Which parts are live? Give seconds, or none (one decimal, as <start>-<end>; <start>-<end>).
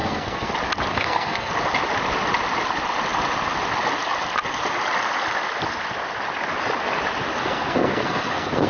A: 0.5-0.9; 1.5-7.4